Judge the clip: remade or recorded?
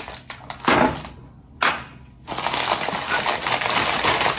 recorded